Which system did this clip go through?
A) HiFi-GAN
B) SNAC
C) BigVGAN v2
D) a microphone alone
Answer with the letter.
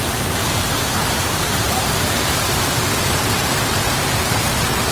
C